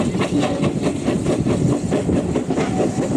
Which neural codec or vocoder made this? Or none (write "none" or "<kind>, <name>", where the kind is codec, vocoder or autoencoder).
none